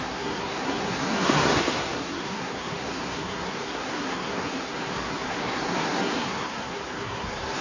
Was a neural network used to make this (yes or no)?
yes